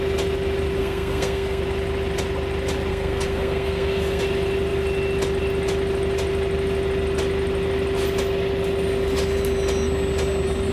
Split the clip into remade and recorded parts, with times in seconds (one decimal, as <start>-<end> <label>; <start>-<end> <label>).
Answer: 0.0-0.8 recorded; 0.8-1.6 remade; 1.6-2.9 recorded; 2.9-4.2 remade; 4.2-10.7 recorded